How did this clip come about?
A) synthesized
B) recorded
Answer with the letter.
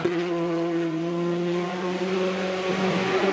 A